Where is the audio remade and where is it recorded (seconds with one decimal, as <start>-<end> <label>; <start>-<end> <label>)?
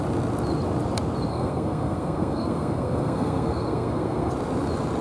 0.0-1.3 recorded; 1.3-4.3 remade; 4.3-5.0 recorded